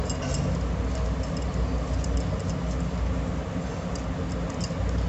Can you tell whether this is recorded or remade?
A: recorded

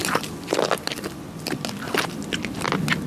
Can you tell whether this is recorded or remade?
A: recorded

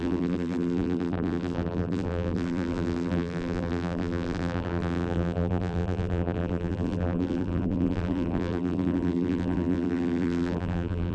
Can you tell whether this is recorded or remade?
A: remade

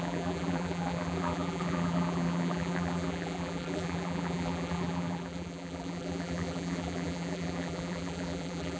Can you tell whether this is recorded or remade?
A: remade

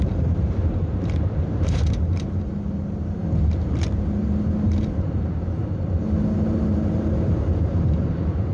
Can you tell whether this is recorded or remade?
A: remade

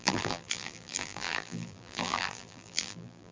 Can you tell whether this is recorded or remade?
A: remade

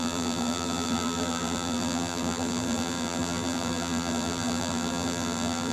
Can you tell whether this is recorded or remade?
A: remade